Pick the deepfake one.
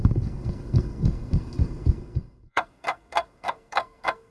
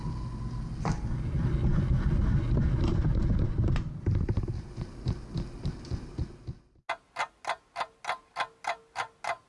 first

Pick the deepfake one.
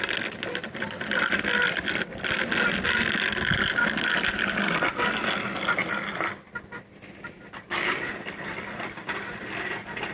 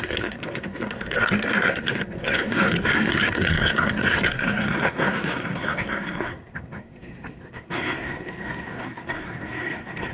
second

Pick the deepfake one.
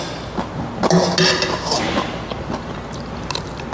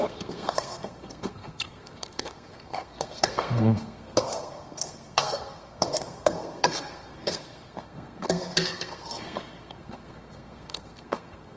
second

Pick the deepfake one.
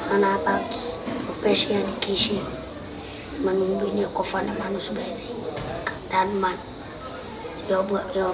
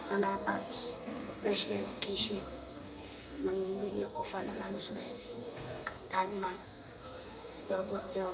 second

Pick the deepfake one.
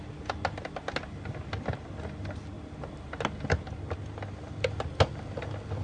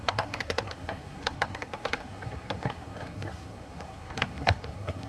second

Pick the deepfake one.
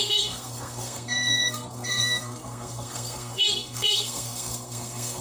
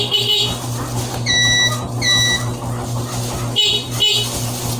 first